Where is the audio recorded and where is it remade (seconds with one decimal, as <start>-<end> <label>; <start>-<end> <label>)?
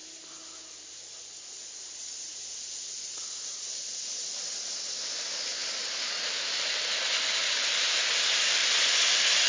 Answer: 0.0-9.5 recorded